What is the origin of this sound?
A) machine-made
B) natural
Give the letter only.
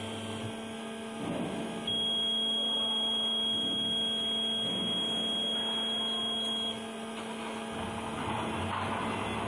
B